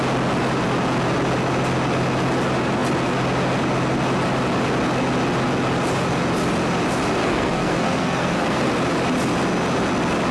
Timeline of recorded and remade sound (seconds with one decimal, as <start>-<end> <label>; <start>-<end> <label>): 0.0-7.2 recorded; 7.2-8.7 remade; 8.7-10.3 recorded